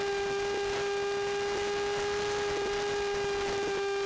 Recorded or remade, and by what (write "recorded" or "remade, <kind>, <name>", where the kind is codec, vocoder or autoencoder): recorded